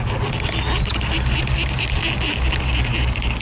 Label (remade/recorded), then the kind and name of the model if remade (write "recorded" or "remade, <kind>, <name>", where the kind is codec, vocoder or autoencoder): recorded